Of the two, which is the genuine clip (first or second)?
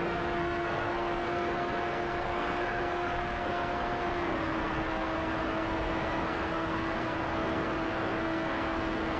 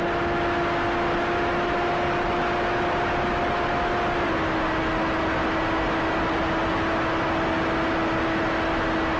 second